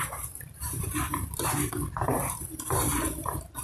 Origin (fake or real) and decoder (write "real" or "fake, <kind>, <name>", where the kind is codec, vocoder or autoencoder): fake, vocoder, BigVGAN v2